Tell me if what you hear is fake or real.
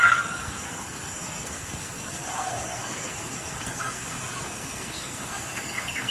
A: fake